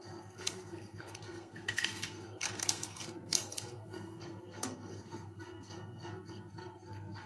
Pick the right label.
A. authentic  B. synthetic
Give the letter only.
B